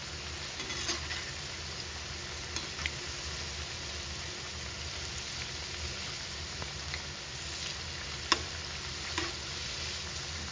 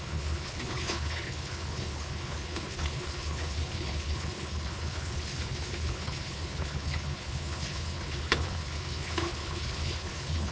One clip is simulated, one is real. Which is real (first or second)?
first